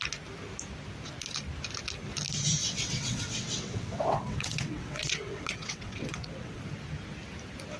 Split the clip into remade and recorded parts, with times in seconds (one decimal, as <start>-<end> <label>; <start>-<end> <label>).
0.0-2.6 recorded; 2.6-6.6 remade; 6.6-7.8 recorded